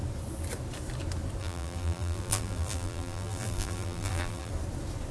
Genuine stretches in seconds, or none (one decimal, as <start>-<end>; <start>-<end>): 0.0-1.4; 4.5-5.1